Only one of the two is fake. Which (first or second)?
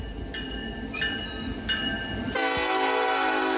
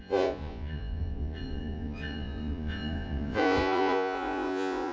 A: second